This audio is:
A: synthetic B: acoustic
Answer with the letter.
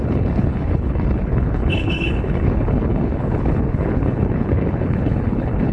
A